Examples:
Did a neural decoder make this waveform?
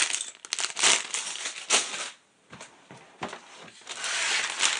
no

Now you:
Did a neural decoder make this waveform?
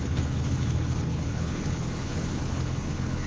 yes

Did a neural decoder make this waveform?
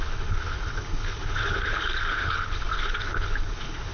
yes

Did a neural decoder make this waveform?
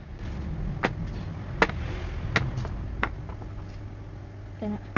no